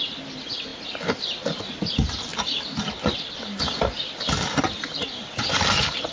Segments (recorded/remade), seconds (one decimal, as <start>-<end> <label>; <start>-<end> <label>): 0.0-6.1 recorded